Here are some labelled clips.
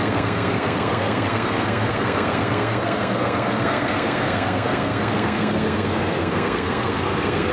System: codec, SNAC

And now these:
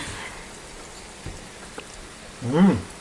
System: none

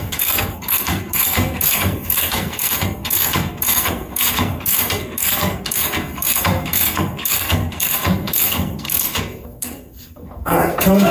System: codec, SNAC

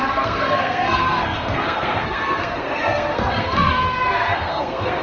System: codec, SNAC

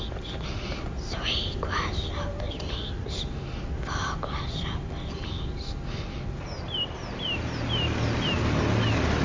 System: none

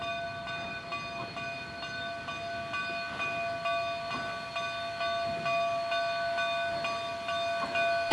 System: none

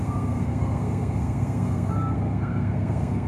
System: codec, SNAC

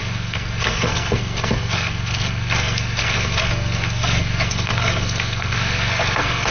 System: codec, SNAC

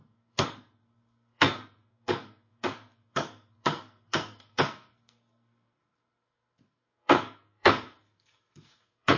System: codec, SNAC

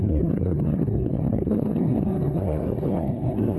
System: codec, SNAC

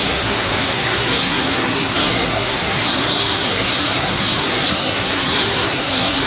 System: codec, SNAC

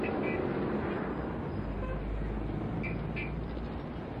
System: none